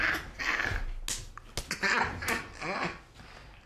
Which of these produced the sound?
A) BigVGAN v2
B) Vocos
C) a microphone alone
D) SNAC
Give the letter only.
C